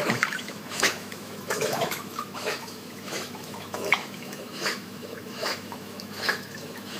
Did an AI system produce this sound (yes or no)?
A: yes